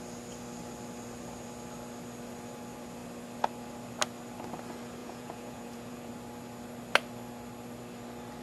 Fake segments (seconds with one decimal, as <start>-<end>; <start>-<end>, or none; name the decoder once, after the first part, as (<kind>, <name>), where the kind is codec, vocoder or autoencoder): 5.0-6.1 (vocoder, Vocos)